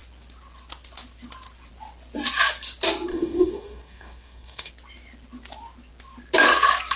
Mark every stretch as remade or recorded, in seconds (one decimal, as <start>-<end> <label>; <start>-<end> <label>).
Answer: 0.0-3.1 recorded; 3.1-4.7 remade; 4.7-7.0 recorded